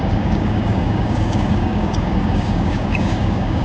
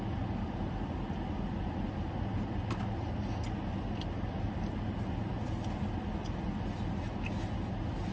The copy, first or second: first